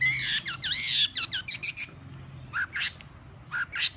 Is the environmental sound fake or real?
real